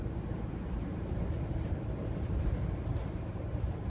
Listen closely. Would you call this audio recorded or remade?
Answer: remade